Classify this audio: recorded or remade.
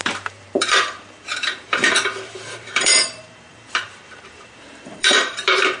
remade